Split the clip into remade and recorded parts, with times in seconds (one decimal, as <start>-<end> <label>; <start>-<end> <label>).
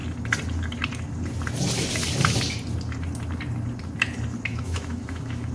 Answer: 0.0-4.5 recorded; 4.5-5.5 remade